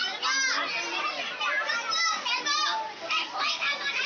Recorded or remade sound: recorded